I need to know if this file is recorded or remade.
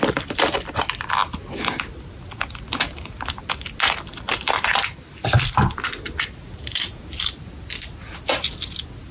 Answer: recorded